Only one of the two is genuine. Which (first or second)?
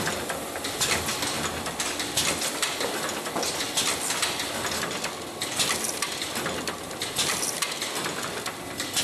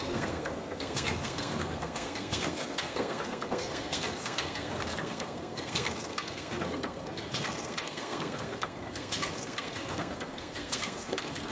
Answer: first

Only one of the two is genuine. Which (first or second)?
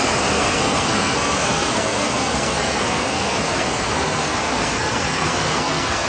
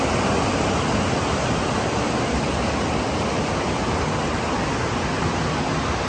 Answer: second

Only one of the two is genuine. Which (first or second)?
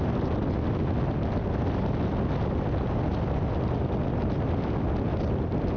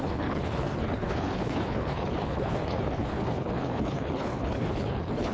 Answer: first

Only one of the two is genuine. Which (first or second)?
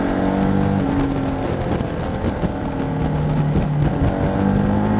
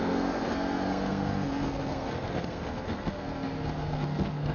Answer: first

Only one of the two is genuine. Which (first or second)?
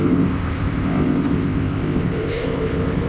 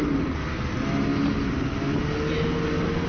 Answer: second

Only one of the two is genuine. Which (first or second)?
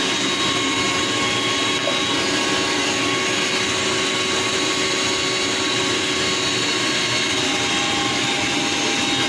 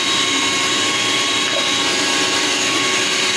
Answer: first